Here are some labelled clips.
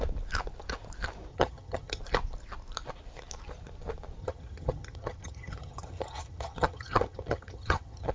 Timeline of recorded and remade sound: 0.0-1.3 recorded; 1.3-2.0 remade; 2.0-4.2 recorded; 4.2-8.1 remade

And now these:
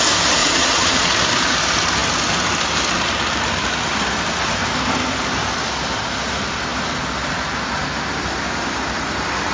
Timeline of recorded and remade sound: 0.0-0.4 recorded; 0.4-1.1 remade; 1.1-9.5 recorded